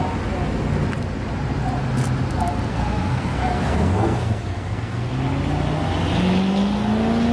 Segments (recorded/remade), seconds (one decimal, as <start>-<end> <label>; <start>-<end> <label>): 0.0-2.7 recorded; 2.7-5.1 remade; 5.1-7.3 recorded